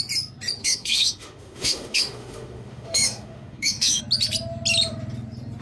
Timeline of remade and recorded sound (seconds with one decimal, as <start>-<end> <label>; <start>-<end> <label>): 0.0-0.6 recorded; 0.6-4.0 remade; 4.0-5.6 recorded